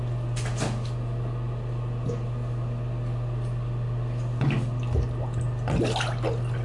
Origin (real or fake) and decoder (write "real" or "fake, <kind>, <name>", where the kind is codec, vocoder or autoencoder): real